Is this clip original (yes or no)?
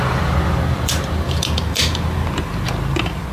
no